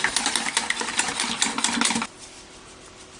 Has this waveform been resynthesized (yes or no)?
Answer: no